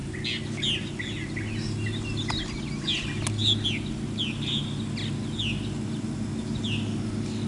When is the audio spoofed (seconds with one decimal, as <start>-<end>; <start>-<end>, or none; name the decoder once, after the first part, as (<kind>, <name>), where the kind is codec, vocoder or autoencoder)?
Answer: none